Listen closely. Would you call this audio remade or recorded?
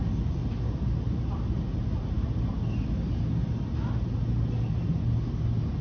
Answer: recorded